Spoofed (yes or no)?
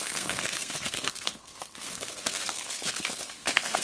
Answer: yes